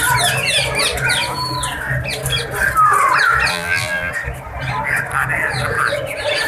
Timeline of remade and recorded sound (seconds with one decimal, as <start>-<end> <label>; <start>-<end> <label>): 0.0-3.5 recorded; 3.5-4.1 remade; 4.1-6.5 recorded